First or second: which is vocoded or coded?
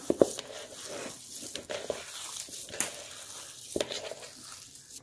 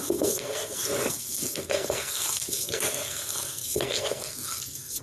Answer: second